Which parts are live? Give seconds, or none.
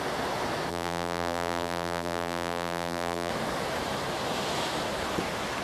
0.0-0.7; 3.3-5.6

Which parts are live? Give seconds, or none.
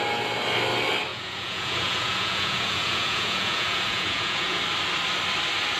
0.0-1.1; 4.6-5.8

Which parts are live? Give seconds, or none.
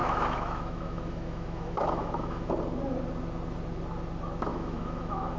2.5-4.5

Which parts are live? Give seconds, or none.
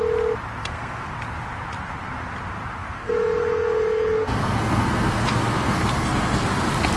0.0-0.6; 1.1-2.8; 6.5-7.0